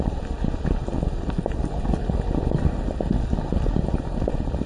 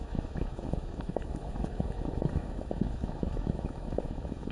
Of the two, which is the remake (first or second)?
second